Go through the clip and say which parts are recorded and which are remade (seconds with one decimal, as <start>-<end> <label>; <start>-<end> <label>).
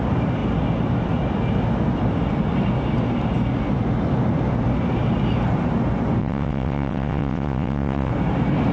0.0-6.2 recorded; 6.2-8.1 remade; 8.1-8.7 recorded